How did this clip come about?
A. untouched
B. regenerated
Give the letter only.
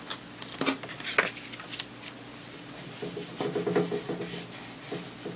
A